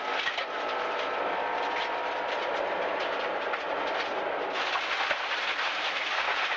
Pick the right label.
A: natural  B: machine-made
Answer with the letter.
A